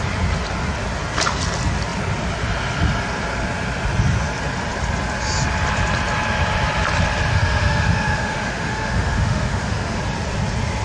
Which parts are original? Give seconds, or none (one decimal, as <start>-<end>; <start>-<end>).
0.0-7.3; 10.0-10.8

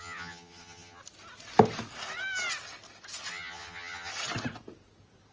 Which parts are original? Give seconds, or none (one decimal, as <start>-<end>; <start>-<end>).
1.0-3.3; 4.1-5.3